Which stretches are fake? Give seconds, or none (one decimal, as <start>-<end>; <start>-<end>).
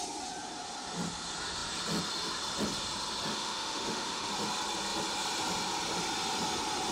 3.3-4.3